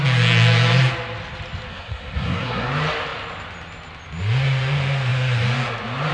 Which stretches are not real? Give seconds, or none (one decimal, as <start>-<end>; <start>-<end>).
1.7-2.7